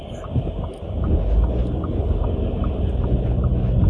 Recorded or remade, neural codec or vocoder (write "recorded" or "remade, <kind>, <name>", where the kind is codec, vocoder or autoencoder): recorded